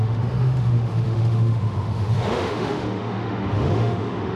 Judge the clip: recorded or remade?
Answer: remade